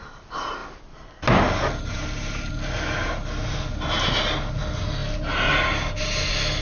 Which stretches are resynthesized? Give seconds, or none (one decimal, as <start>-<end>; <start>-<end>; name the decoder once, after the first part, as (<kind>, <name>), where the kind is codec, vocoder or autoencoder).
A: none